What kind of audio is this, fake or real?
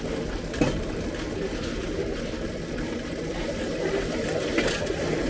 real